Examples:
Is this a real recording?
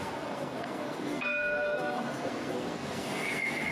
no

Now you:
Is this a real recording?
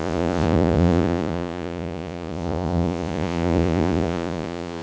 no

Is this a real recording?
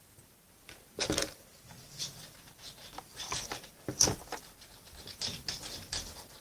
yes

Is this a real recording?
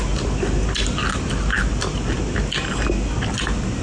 yes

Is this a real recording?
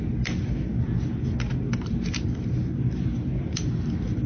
no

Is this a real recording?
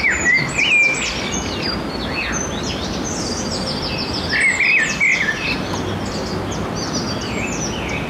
yes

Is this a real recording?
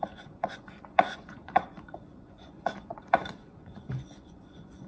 no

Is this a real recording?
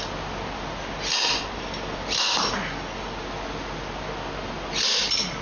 yes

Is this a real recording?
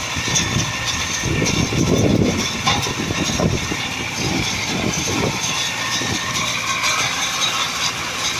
yes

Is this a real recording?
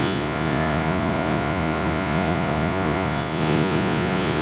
no